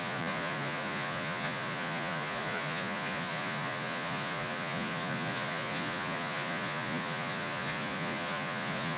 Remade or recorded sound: remade